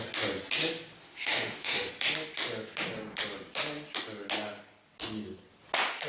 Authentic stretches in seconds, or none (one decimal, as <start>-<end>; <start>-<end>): 0.0-1.0; 1.9-6.1